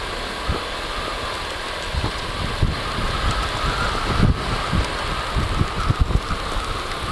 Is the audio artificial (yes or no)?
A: no